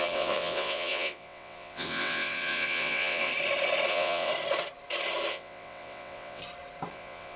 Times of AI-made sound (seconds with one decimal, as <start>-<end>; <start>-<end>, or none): 0.0-3.3; 3.9-4.3; 5.3-6.4; 6.9-7.4